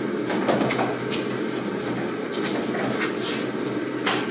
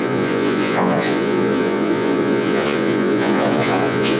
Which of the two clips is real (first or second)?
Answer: first